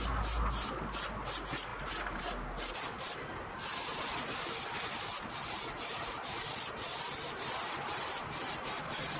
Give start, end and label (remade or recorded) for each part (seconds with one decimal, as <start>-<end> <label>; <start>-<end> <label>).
0.0-9.2 recorded